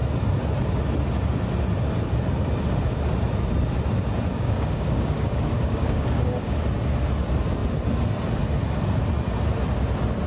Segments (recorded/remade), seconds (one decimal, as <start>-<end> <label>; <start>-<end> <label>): 0.0-4.3 recorded; 4.3-6.6 remade; 6.6-10.3 recorded